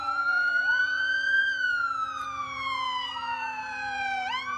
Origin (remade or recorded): remade